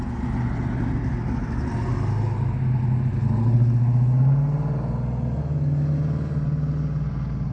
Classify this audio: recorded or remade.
recorded